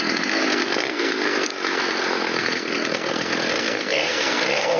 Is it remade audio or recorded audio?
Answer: remade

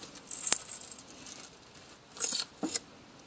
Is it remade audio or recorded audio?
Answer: recorded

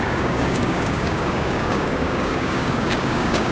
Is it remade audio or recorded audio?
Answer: remade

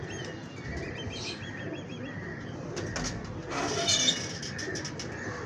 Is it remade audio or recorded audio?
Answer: recorded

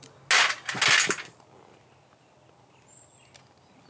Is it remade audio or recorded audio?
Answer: recorded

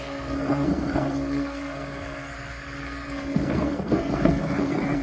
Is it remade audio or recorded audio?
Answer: remade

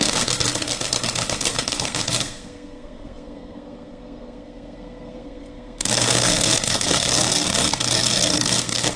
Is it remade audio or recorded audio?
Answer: remade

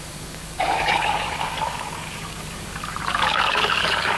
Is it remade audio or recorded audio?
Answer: remade